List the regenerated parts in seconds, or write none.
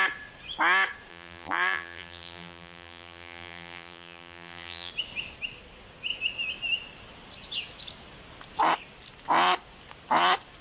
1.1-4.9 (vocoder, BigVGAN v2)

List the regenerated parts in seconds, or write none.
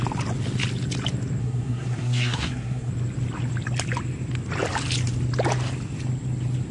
1.4-2.9 (codec, SNAC)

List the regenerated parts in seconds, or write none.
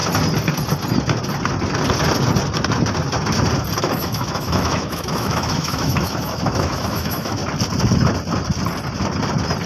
3.8-7.4 (autoencoder, DAC-VAE)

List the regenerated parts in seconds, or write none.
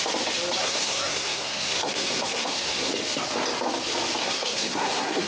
0.6-2.9 (codec, SNAC); 4.2-5.3